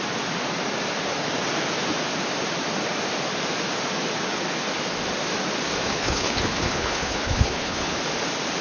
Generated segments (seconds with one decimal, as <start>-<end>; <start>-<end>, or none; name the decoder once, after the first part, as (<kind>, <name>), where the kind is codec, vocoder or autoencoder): 5.9-8.0 (codec, HILCodec)

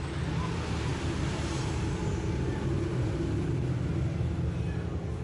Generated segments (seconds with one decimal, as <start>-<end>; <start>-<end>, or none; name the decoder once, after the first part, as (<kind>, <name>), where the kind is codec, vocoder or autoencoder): none

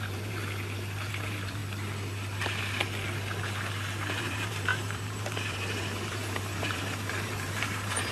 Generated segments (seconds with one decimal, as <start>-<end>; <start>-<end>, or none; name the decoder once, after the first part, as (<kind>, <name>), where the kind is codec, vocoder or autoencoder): 0.0-0.4 (vocoder, BigVGAN v2); 1.1-1.6; 4.2-8.1